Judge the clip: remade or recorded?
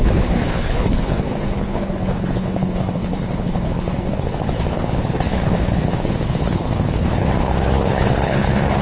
remade